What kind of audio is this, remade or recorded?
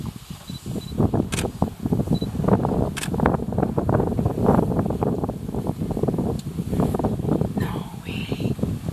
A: recorded